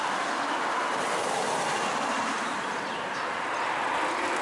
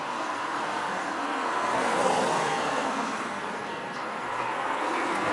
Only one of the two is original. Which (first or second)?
first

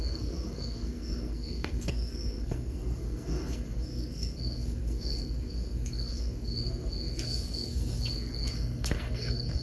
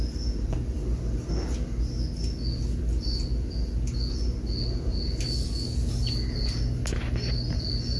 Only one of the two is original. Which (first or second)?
second